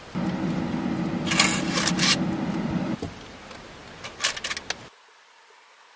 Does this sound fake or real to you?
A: real